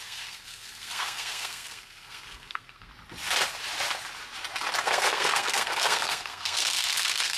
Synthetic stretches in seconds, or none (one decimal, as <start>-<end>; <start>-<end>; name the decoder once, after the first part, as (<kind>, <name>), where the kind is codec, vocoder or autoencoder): 0.0-2.9 (codec, SNAC); 4.8-7.4